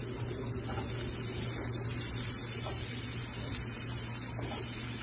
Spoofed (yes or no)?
no